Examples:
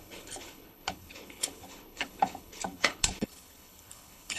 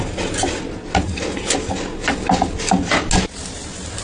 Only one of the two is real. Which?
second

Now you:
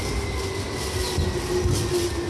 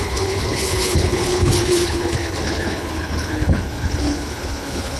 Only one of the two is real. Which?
first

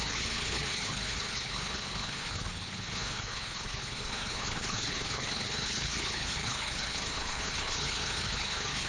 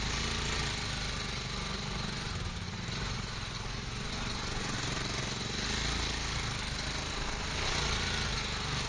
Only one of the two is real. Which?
second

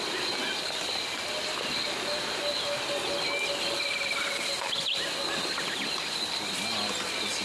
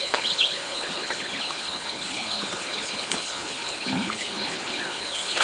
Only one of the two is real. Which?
first